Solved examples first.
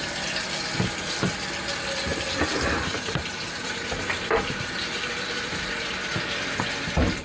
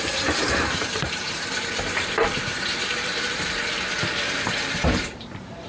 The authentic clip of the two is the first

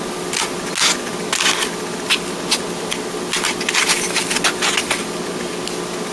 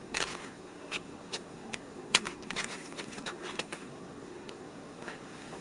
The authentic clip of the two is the first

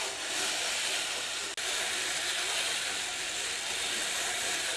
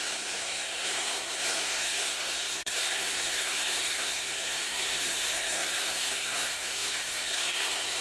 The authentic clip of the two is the first